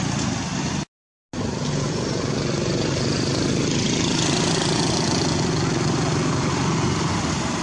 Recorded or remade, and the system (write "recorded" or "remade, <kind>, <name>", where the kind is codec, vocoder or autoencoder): recorded